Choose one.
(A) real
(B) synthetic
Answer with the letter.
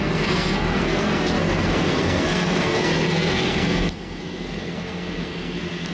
B